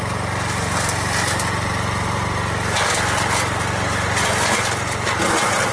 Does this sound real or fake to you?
real